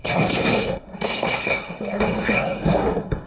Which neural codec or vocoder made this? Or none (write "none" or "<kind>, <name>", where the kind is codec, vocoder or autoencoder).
codec, SNAC